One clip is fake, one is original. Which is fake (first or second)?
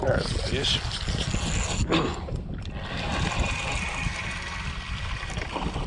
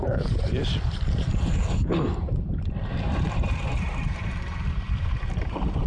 second